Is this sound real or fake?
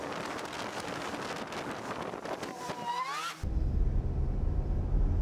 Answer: real